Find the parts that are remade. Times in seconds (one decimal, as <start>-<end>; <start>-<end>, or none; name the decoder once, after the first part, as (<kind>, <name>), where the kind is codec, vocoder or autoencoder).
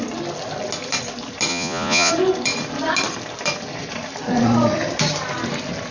1.5-2.1 (vocoder, Vocos)